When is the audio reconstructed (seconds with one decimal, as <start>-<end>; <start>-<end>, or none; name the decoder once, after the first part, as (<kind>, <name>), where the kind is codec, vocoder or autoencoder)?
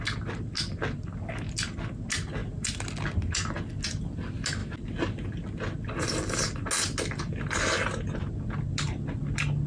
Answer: none